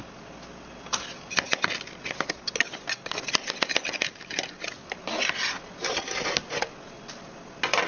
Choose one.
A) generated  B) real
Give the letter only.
B